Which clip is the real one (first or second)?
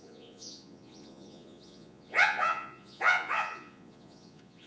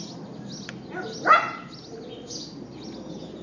second